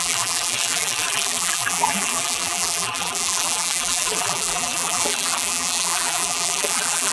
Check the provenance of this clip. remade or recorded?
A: remade